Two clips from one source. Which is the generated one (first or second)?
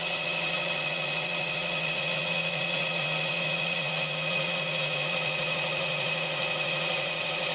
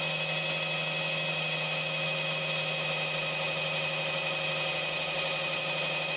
first